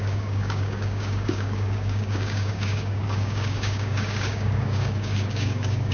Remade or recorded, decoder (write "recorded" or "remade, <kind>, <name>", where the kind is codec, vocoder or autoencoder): remade, codec, DAC